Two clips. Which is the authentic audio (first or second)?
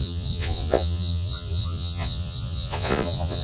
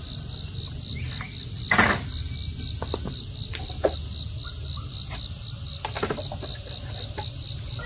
second